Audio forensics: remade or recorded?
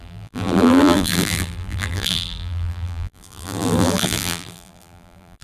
remade